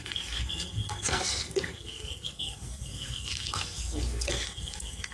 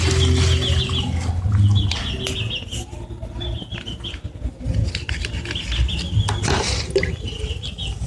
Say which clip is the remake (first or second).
first